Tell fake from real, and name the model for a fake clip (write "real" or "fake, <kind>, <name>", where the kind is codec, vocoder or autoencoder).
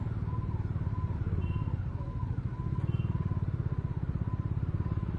real